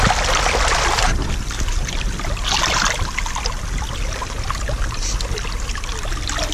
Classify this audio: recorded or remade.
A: recorded